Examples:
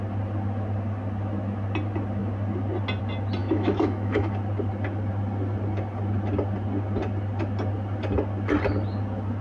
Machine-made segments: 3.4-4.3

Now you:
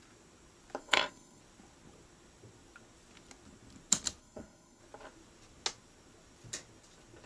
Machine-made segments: 0.8-1.4; 4.2-4.8

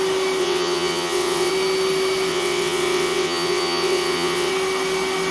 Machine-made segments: 0.4-1.5; 2.3-4.5

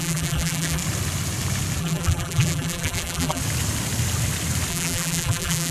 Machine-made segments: 0.0-0.8; 1.8-3.4; 4.7-5.7